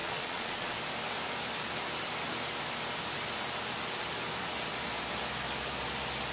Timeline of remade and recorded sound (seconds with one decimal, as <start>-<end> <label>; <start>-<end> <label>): 0.0-0.7 remade; 0.7-6.3 recorded